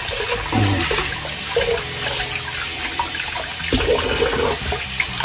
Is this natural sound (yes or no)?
yes